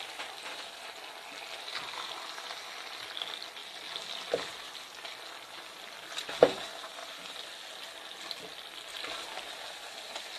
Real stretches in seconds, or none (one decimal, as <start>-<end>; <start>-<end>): 0.0-10.4